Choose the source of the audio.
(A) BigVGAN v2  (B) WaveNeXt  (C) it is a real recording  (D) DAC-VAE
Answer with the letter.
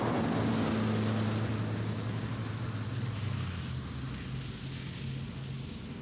C